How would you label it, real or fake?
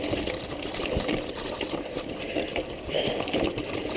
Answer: real